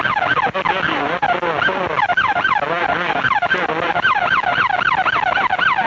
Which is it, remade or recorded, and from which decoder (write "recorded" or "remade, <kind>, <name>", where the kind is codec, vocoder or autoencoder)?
recorded